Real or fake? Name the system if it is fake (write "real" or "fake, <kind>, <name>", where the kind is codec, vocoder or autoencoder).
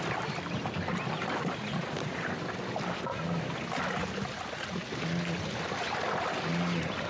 real